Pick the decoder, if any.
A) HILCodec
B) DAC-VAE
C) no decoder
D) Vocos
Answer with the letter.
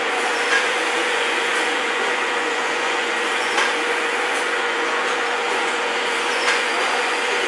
D